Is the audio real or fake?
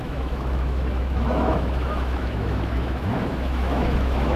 fake